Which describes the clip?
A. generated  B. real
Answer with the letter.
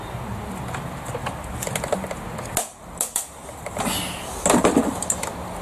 B